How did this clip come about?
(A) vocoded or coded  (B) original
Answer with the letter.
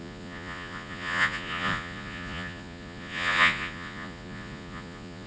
A